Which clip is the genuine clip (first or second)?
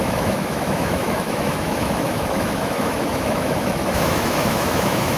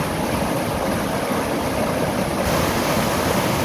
second